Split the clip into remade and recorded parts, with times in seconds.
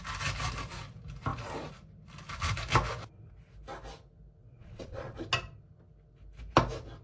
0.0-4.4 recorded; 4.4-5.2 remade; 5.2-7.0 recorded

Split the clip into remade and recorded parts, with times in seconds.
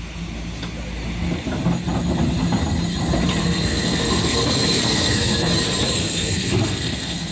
0.0-3.4 recorded; 3.4-5.5 remade; 5.5-6.0 recorded; 6.0-7.3 remade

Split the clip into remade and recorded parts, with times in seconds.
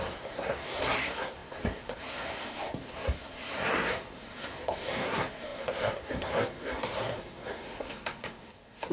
0.0-8.9 remade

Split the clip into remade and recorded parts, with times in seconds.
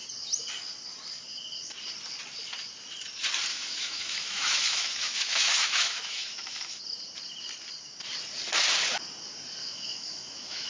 0.0-3.5 recorded; 3.5-6.8 remade; 6.8-9.6 recorded; 9.6-10.7 remade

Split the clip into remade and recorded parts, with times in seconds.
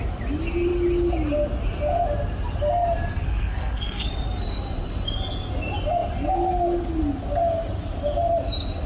0.0-3.1 recorded; 3.1-4.1 remade; 4.1-8.9 recorded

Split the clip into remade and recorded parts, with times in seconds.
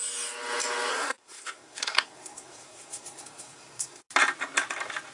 0.0-0.9 recorded; 0.9-4.0 remade; 4.0-5.1 recorded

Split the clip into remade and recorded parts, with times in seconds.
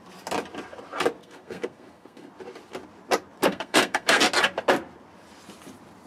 0.0-1.2 recorded; 1.2-2.3 remade; 2.3-3.5 recorded; 3.5-4.2 remade; 4.2-6.1 recorded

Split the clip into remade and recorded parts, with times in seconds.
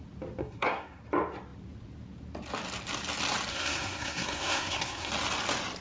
0.0-0.4 recorded; 0.4-1.0 remade; 1.0-3.5 recorded; 3.5-5.1 remade; 5.1-5.8 recorded